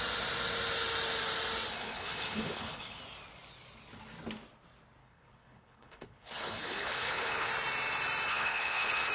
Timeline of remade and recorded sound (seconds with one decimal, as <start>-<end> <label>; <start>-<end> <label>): 0.0-1.7 recorded; 1.7-3.0 remade; 3.0-5.0 recorded; 5.0-7.5 remade; 7.5-8.3 recorded; 8.3-9.1 remade